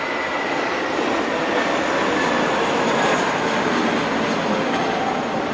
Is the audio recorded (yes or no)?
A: yes